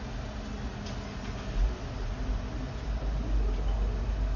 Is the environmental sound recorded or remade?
recorded